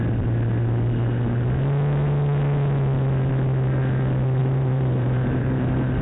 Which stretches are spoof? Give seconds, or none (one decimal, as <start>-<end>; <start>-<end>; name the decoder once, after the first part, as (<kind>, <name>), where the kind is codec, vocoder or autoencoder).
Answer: 4.4-6.0 (vocoder, BigVGAN v2)